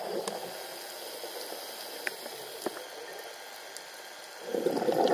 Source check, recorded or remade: recorded